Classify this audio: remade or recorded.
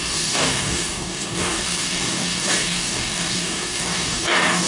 remade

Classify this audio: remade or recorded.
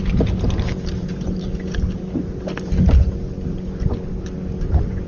recorded